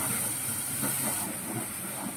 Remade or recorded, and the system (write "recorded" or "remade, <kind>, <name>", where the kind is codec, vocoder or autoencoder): remade, vocoder, BigVGAN v2